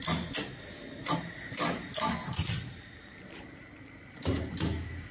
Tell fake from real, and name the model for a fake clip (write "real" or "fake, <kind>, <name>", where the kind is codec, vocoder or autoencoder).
real